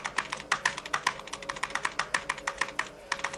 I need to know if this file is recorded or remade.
recorded